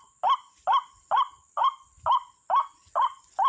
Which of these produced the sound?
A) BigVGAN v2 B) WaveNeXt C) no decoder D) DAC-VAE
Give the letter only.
C